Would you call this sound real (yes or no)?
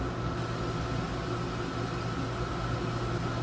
yes